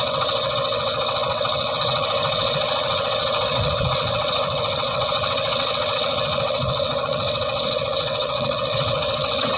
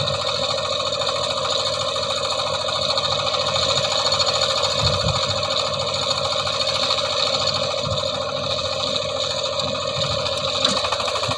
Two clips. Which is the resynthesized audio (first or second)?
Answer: first